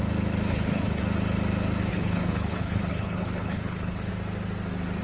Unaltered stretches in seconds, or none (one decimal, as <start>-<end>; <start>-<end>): 0.0-0.5; 1.0-1.9; 4.1-5.0